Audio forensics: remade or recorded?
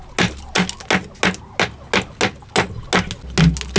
recorded